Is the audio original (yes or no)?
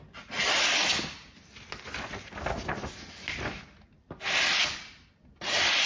yes